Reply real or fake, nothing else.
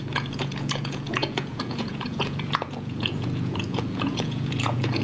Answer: fake